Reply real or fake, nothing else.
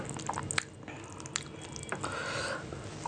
real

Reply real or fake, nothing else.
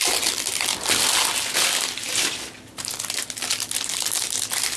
real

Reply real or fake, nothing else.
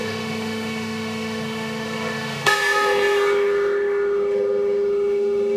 fake